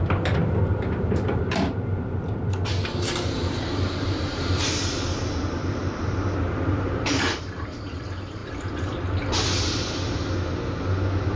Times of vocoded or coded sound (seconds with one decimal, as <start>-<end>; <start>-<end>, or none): 0.0-8.4